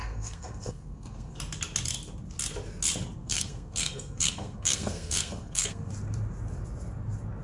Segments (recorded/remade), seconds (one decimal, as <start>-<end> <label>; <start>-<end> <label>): 0.0-1.4 remade; 1.4-3.2 recorded; 3.2-5.9 remade; 5.9-7.4 recorded